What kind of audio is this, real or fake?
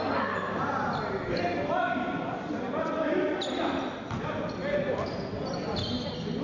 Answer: real